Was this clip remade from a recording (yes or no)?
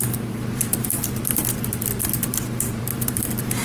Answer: yes